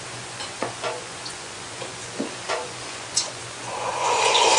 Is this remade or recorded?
remade